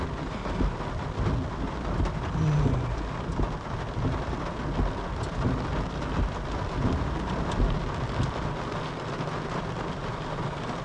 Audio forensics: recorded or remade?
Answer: recorded